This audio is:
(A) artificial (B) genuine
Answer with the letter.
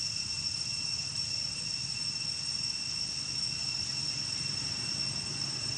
B